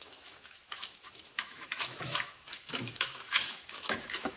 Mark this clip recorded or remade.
remade